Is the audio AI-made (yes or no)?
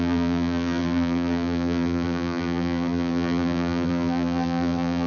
yes